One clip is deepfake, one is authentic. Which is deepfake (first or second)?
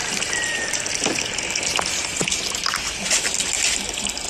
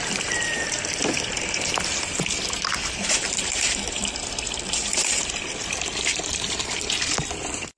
second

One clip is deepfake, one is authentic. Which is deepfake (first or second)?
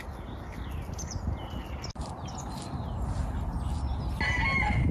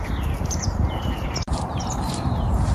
second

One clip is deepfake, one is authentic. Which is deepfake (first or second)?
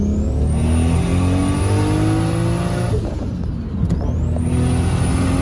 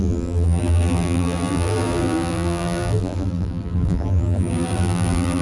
second